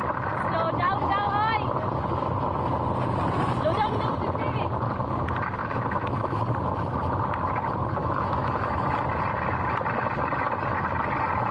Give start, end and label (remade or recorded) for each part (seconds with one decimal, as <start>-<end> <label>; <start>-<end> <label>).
0.0-5.6 recorded; 5.6-6.4 remade; 6.4-8.0 recorded; 8.0-8.9 remade; 8.9-11.5 recorded